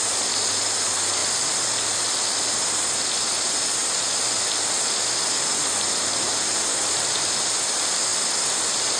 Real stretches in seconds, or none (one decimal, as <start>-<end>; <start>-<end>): 0.0-9.0